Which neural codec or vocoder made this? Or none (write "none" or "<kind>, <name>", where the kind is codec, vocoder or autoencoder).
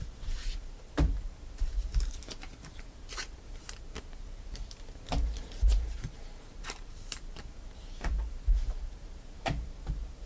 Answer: vocoder, BigVGAN v2